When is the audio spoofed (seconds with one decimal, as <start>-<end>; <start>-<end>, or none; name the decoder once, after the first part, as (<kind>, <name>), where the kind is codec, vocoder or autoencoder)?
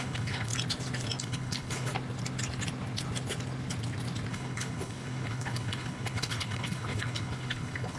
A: 0.0-0.5 (codec, HILCodec); 1.2-1.9; 4.3-8.0